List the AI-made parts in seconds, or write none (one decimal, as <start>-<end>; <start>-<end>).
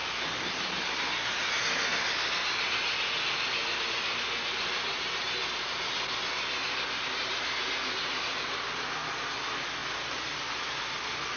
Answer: none